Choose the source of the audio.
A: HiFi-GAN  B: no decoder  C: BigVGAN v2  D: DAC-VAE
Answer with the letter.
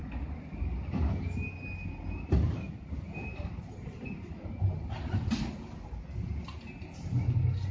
B